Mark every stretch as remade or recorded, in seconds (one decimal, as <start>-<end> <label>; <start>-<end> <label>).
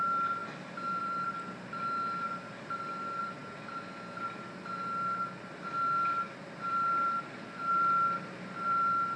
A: 0.0-9.2 remade